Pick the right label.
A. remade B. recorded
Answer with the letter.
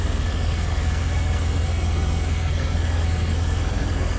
A